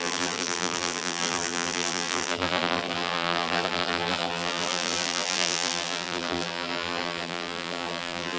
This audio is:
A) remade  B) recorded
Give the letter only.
A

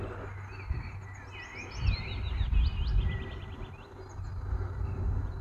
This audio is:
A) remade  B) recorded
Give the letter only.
B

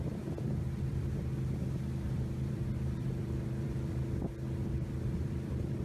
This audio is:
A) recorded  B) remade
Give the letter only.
B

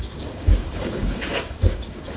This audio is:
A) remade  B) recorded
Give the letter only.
A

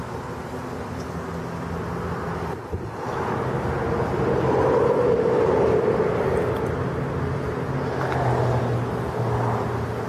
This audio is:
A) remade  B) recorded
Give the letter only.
B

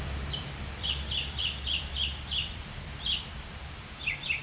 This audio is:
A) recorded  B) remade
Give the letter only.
B